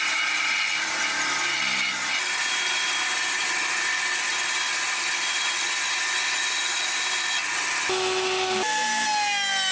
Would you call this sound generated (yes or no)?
no